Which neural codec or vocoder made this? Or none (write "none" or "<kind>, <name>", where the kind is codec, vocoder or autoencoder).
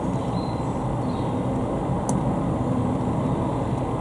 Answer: none